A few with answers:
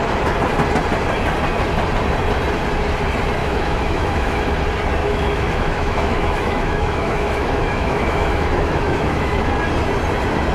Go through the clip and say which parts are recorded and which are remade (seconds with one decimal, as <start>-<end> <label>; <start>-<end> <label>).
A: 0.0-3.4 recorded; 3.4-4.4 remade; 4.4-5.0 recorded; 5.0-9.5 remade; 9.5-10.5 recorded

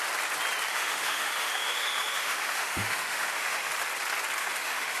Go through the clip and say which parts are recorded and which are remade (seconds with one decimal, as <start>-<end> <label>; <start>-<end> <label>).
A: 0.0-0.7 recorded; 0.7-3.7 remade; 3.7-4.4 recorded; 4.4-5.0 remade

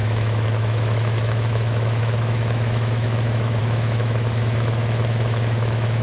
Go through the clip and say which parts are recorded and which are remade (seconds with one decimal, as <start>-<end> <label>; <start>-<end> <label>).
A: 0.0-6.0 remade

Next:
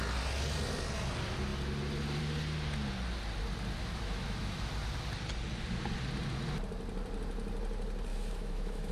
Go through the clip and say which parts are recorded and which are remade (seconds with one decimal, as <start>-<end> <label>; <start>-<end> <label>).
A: 0.0-3.8 recorded; 3.8-4.7 remade; 4.7-8.1 recorded; 8.1-8.9 remade